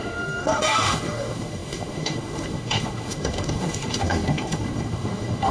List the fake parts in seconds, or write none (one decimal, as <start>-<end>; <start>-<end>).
0.0-5.5